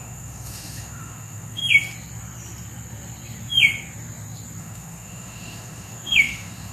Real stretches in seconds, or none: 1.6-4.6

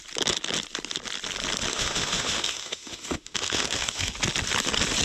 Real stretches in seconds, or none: 0.0-1.7; 4.1-5.0

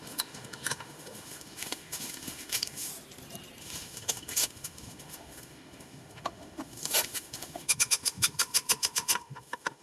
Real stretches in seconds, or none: 2.9-3.6

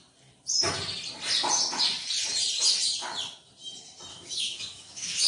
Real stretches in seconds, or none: 0.0-4.1

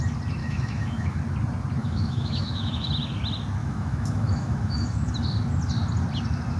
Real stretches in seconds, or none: 0.0-0.4; 1.2-1.8; 2.9-3.6; 5.1-6.6